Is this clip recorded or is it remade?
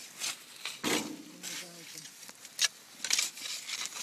recorded